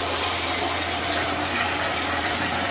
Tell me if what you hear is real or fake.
fake